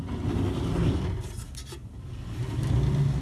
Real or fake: real